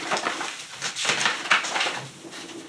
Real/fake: fake